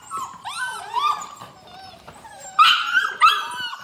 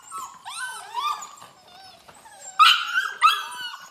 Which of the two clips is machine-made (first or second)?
first